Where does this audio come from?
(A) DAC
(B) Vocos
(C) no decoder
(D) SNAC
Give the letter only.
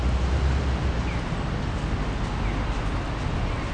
C